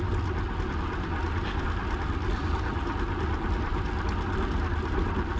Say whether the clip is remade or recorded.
recorded